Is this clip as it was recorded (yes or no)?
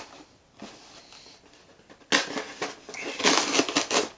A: yes